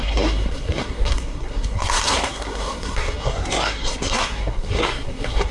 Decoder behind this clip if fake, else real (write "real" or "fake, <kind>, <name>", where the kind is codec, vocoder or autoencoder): fake, codec, SNAC